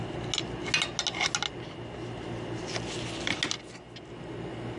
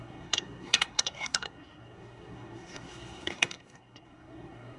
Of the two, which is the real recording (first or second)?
first